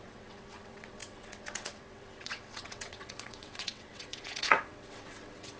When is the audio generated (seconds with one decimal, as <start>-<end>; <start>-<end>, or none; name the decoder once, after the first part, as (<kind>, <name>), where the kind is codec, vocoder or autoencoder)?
0.0-5.6 (vocoder, WaveNeXt)